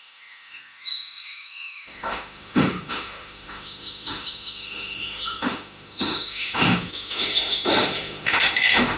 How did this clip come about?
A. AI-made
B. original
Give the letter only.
A